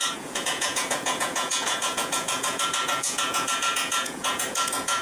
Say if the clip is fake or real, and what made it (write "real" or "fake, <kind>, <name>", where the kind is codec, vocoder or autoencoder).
fake, vocoder, Vocos